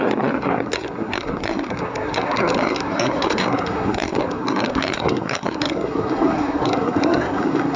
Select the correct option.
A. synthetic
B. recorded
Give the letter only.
A